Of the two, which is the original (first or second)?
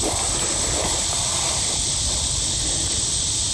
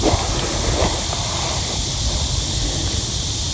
second